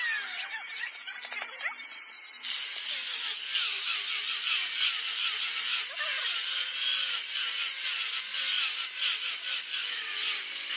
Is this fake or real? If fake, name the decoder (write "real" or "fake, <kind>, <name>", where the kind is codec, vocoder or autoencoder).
real